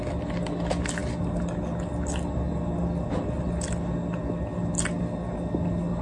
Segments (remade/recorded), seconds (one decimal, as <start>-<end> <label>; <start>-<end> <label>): 0.0-6.0 recorded